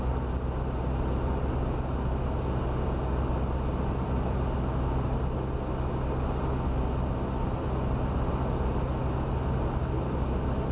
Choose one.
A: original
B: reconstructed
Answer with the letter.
A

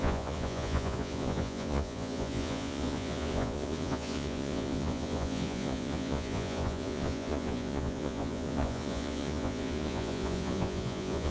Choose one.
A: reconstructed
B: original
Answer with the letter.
A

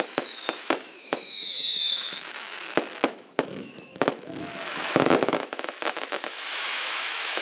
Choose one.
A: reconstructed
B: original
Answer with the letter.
A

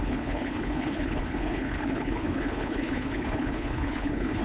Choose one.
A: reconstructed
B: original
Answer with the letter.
A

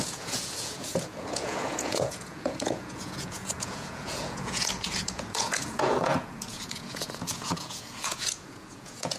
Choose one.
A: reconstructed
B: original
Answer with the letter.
A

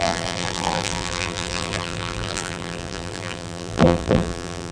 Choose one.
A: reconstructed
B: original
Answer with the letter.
A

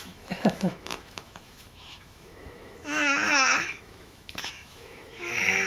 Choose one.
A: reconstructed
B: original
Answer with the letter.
A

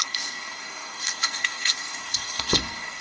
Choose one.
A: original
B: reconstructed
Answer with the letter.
B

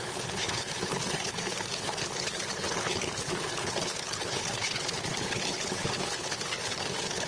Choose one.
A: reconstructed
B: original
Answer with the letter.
A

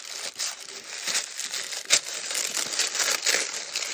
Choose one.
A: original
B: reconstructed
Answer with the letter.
A